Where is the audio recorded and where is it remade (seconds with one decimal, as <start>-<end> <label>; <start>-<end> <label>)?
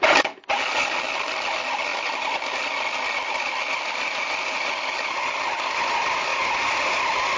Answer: 0.0-7.4 recorded